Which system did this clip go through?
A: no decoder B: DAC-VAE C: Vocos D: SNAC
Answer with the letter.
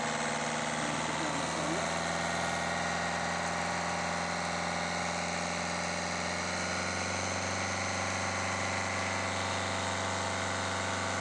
A